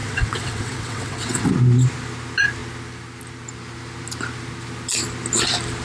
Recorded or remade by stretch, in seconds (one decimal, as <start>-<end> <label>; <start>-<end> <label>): 0.0-1.5 remade; 1.5-5.8 recorded